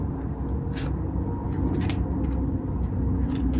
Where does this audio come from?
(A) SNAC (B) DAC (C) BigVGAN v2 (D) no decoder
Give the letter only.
D